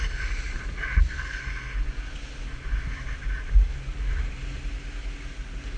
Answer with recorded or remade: recorded